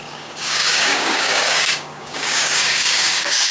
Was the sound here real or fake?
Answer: fake